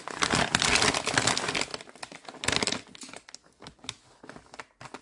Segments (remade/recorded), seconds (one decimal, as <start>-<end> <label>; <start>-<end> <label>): 0.0-5.0 recorded

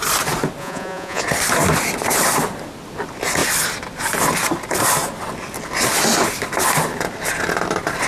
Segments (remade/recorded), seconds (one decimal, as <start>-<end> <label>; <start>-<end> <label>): 0.0-0.6 recorded; 0.6-1.2 remade; 1.2-8.1 recorded

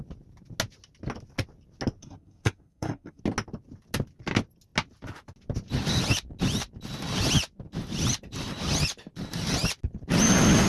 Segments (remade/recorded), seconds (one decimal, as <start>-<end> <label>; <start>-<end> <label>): 0.0-2.0 recorded; 2.0-3.2 remade; 3.2-10.7 recorded